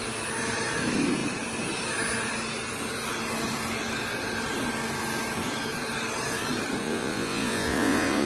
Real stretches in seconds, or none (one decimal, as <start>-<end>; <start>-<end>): 0.0-6.8